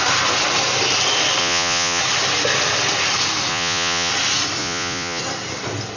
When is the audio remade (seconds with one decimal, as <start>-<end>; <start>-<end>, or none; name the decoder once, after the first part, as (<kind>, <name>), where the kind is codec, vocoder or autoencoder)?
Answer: 1.4-2.0 (vocoder, Vocos); 3.5-4.1; 4.6-5.2